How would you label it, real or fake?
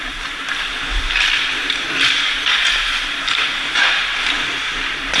fake